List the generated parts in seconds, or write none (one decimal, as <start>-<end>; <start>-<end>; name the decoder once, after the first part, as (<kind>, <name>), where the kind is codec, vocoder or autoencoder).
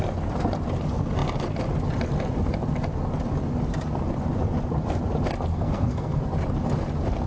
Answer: 5.5-6.2 (codec, SNAC)